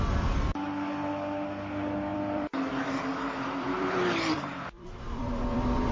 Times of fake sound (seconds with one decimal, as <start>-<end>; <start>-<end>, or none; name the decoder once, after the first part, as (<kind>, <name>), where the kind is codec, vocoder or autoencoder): 2.1-5.9 (vocoder, BigVGAN v2)

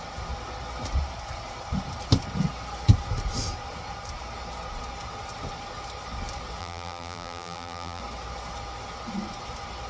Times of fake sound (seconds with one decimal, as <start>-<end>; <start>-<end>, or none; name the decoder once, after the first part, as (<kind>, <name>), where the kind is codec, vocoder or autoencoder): 6.6-8.0 (vocoder, BigVGAN v2)

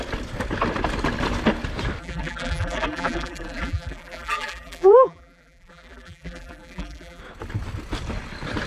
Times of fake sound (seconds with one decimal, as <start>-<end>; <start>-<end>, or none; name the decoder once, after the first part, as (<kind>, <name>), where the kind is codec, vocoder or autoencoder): 2.0-7.2 (vocoder, BigVGAN v2)

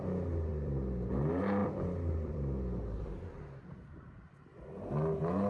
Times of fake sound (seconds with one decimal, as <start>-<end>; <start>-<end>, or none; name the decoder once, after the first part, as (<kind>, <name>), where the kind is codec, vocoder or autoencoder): 0.5-1.1 (vocoder, BigVGAN v2); 1.6-4.9

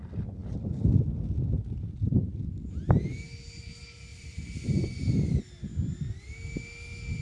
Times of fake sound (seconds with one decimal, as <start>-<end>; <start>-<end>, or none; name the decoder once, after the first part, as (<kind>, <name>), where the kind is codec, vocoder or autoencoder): 0.4-1.0 (vocoder, BigVGAN v2); 4.1-5.4

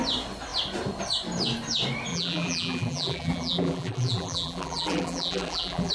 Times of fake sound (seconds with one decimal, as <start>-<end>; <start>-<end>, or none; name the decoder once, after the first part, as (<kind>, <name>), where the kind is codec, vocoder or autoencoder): 2.1-5.9 (vocoder, BigVGAN v2)

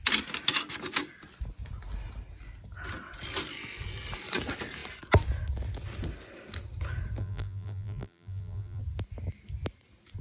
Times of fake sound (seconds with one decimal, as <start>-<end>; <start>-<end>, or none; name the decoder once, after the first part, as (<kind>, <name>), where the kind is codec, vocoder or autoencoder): 7.2-8.8 (vocoder, BigVGAN v2)